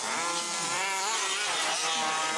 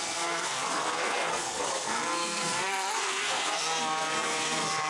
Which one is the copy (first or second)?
second